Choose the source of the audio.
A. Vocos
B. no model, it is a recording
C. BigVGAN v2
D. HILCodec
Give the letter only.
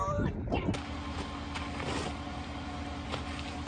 B